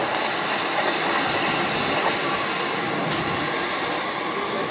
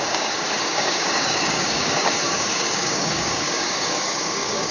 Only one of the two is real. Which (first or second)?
first